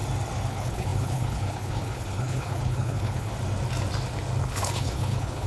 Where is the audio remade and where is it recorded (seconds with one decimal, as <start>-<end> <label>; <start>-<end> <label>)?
0.0-0.5 recorded; 0.5-3.3 remade; 3.3-4.4 recorded; 4.4-5.5 remade